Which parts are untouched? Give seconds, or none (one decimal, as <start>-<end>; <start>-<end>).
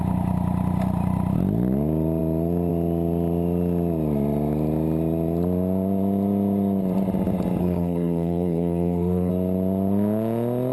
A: 0.0-7.6; 9.3-10.7